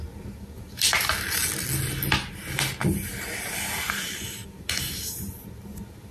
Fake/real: real